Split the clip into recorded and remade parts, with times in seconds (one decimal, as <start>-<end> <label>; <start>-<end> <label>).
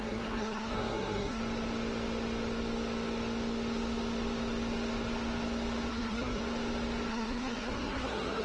0.0-1.4 remade; 1.4-5.9 recorded; 5.9-6.4 remade; 6.4-7.1 recorded; 7.1-8.4 remade